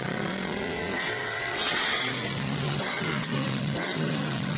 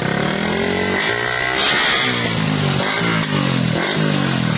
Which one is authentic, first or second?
second